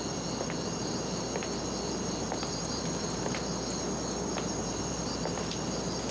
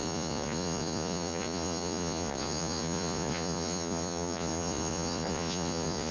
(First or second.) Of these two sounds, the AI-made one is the second